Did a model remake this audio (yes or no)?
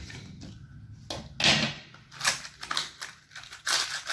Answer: no